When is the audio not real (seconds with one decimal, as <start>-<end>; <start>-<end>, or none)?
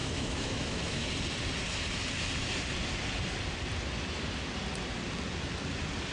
0.0-1.1